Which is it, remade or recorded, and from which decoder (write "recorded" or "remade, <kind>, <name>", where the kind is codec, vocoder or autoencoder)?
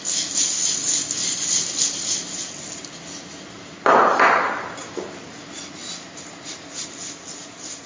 recorded